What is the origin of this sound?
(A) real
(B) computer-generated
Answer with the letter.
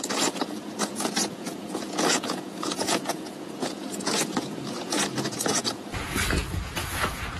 B